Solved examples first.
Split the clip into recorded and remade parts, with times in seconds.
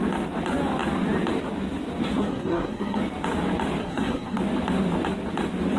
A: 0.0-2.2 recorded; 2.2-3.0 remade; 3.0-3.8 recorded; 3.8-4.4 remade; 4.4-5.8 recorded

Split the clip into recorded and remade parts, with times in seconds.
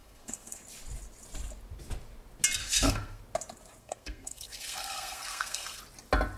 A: 0.0-0.6 remade; 0.6-2.6 recorded; 2.6-3.2 remade; 3.2-3.8 recorded; 3.8-5.8 remade; 5.8-6.4 recorded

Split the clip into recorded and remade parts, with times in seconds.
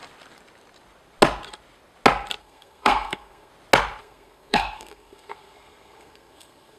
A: 0.0-2.4 recorded; 2.4-3.5 remade; 3.5-4.0 recorded; 4.0-6.8 remade